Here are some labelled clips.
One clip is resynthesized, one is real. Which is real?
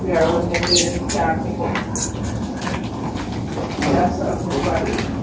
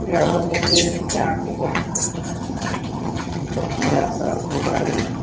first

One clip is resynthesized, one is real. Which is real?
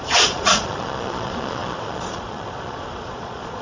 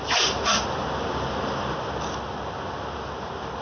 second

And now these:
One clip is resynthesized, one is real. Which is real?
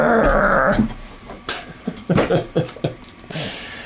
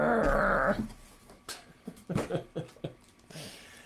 second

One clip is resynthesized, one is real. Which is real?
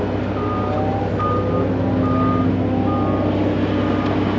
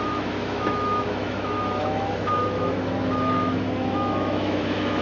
first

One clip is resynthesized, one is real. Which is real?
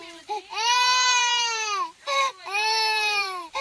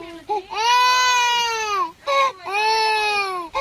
second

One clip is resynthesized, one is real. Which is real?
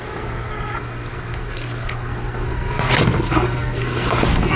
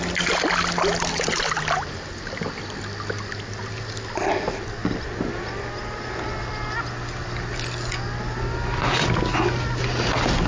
second